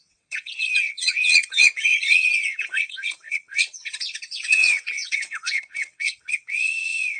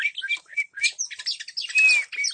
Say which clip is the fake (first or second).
first